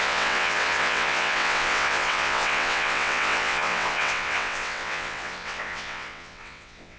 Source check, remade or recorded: remade